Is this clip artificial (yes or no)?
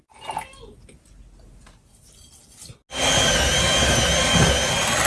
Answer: no